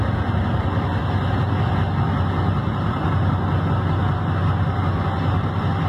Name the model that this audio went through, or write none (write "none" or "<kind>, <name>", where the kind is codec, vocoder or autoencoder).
none